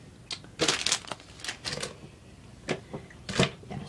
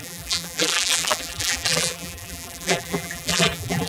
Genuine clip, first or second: first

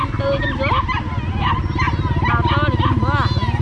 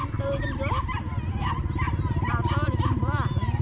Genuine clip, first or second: first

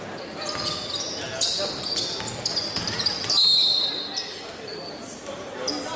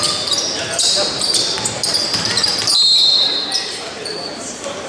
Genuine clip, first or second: first